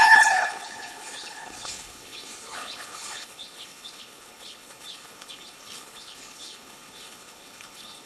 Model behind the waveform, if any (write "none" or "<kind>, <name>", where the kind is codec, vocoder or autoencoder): codec, HILCodec